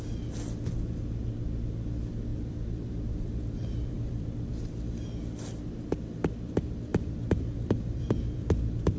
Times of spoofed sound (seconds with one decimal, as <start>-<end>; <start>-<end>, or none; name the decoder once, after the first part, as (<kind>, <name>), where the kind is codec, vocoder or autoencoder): 2.3-4.5 (vocoder, BigVGAN v2); 6.9-9.0